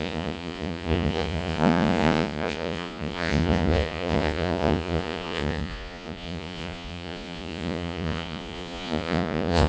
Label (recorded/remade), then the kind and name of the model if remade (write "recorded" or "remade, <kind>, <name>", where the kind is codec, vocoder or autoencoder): remade, vocoder, Vocos